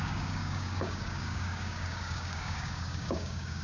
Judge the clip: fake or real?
fake